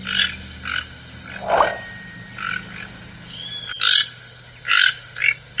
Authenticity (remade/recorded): recorded